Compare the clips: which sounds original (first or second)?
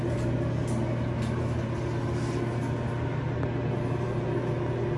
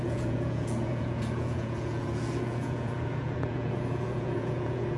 first